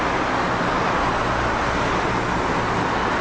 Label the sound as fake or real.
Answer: real